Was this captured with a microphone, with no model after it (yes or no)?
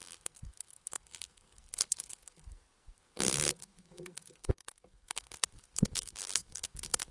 no